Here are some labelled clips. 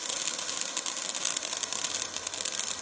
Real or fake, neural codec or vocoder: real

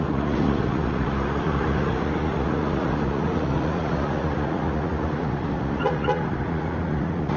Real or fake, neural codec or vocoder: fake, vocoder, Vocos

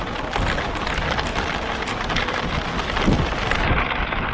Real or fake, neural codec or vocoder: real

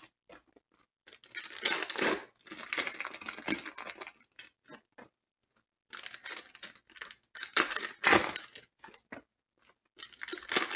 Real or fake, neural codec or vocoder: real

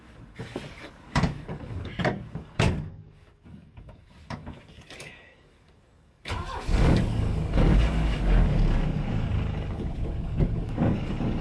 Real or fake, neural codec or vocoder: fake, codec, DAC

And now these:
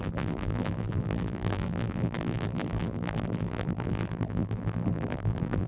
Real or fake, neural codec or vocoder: fake, vocoder, BigVGAN v2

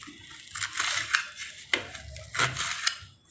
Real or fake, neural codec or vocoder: real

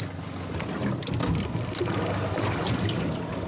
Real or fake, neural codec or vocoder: real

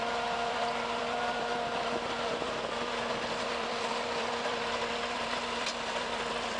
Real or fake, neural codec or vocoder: fake, vocoder, BigVGAN v2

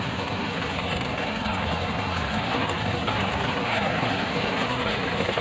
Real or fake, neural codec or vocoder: fake, codec, SNAC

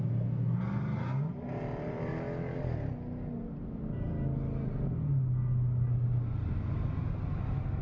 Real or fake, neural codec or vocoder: real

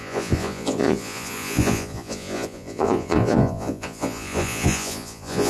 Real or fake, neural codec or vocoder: fake, vocoder, Vocos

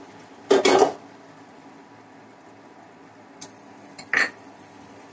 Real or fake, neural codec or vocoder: fake, vocoder, BigVGAN v2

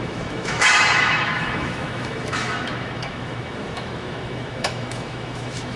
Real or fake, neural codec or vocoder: fake, autoencoder, DAC-VAE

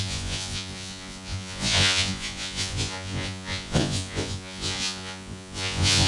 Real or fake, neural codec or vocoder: fake, vocoder, Vocos